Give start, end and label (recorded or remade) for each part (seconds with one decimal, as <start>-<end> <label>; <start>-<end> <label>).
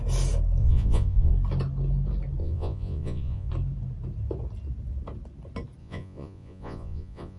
0.0-0.6 recorded; 0.6-1.3 remade; 1.3-2.4 recorded; 2.4-3.5 remade; 3.5-5.8 recorded; 5.8-7.4 remade